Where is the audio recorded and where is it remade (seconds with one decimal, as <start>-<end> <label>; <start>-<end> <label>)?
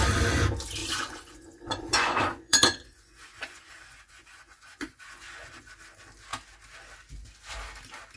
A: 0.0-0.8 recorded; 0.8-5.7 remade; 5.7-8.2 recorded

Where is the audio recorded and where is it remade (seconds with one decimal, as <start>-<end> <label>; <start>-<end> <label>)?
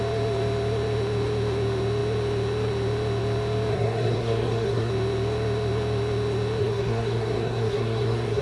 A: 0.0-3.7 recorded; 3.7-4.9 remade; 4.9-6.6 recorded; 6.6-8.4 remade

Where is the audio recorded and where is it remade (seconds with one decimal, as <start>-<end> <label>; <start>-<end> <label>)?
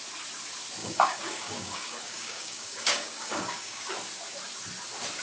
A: 0.0-0.8 recorded; 0.8-3.9 remade; 3.9-5.2 recorded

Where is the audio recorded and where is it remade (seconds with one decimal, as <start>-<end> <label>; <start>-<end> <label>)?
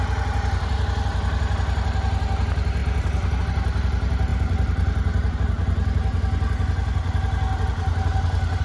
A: 0.0-8.6 recorded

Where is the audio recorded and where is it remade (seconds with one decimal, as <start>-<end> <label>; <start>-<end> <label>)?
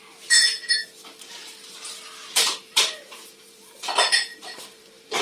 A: 0.0-5.2 remade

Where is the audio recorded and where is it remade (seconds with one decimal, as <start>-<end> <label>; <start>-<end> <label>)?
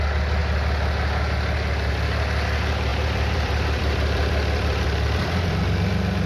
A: 0.0-2.9 recorded; 2.9-5.5 remade; 5.5-6.3 recorded